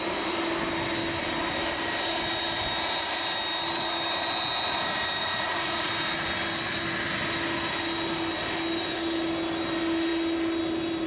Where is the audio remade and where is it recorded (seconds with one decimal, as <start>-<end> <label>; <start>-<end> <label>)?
0.0-5.2 recorded; 5.2-5.9 remade; 5.9-11.1 recorded